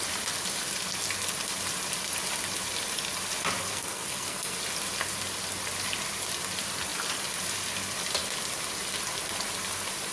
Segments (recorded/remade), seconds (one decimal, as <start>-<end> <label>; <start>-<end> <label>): 0.0-3.6 recorded; 3.6-4.6 remade; 4.6-10.1 recorded